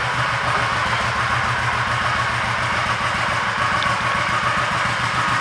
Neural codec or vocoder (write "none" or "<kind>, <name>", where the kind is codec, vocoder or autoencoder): vocoder, BigVGAN v2